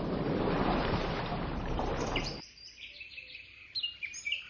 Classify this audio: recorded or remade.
remade